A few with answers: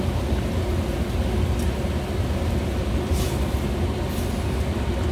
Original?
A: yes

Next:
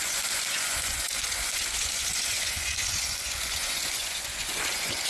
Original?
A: no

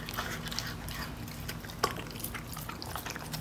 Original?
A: yes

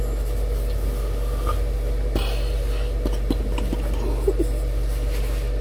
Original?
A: yes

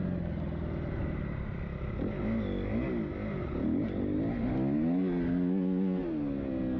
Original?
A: yes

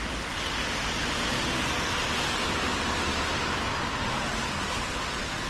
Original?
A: yes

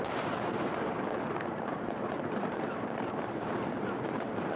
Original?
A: no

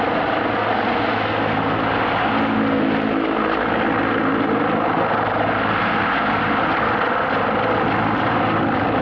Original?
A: yes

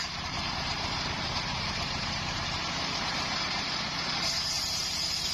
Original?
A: no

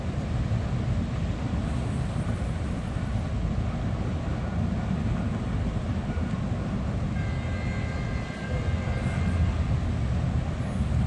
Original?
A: yes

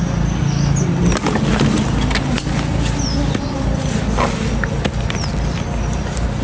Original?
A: yes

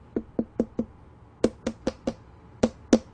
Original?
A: yes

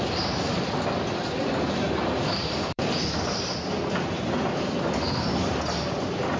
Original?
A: no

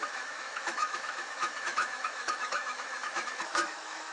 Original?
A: no